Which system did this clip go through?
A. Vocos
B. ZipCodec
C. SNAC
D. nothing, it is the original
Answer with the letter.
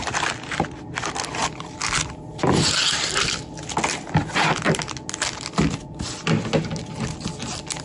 D